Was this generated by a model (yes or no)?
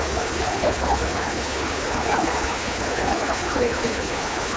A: yes